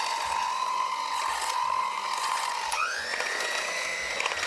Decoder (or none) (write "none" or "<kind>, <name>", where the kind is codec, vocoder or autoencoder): vocoder, Vocos